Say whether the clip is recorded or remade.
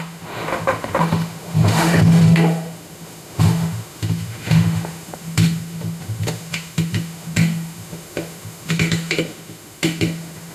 remade